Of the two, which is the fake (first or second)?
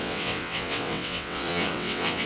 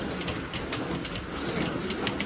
first